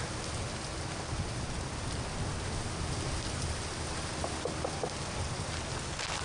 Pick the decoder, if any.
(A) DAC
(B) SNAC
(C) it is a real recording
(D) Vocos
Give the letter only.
C